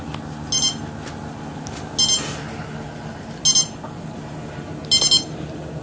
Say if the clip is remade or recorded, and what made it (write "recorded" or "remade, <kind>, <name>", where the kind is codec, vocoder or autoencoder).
recorded